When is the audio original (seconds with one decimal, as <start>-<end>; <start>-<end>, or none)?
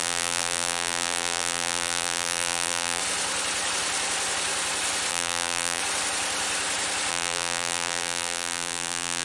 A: 3.0-5.1; 5.8-7.1